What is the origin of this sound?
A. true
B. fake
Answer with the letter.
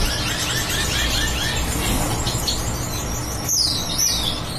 A